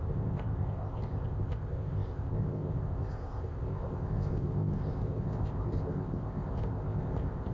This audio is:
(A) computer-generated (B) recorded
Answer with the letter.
A